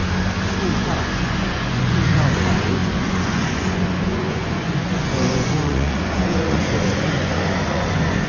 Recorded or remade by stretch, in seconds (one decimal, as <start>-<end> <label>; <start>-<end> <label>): 0.0-0.7 recorded; 0.7-8.3 remade